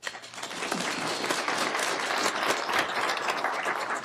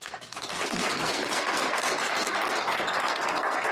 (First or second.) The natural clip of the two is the first